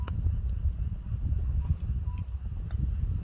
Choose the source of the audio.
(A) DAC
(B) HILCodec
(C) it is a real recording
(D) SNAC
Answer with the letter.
C